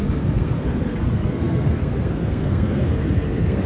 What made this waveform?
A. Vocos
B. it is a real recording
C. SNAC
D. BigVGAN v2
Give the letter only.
C